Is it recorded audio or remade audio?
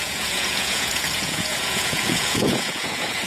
remade